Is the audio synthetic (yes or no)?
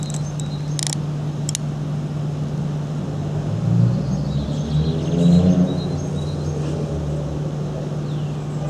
no